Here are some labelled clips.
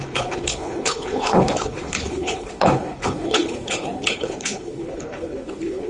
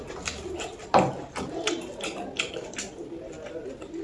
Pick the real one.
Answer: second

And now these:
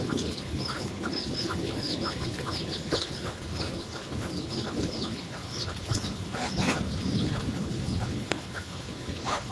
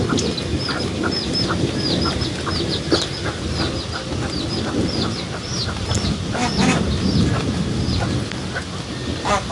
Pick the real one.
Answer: second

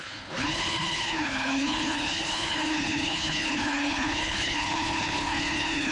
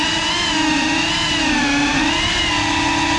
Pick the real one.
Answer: second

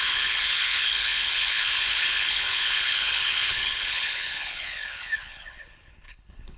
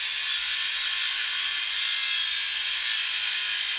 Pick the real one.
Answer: second